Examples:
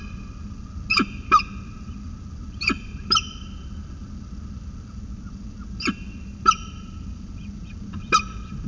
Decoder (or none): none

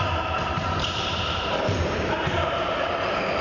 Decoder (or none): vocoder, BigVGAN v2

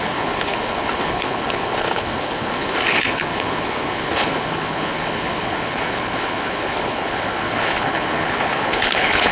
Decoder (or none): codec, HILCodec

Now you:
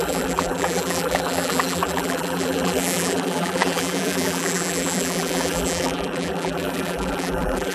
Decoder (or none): vocoder, BigVGAN v2